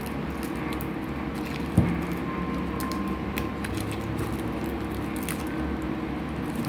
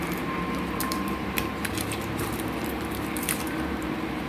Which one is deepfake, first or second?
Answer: second